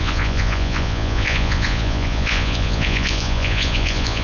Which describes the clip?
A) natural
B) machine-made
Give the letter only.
B